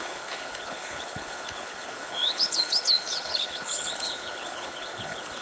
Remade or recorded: remade